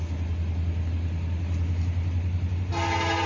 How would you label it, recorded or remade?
recorded